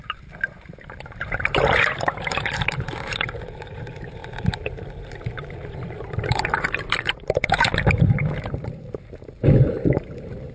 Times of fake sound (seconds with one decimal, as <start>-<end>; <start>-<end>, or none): 0.0-10.5